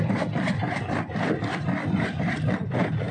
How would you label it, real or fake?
fake